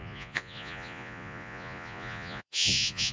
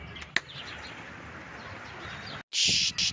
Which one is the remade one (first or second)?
first